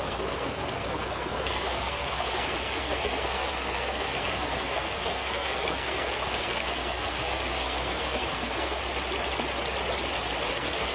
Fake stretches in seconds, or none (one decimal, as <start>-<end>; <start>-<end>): 0.0-8.8; 10.5-10.9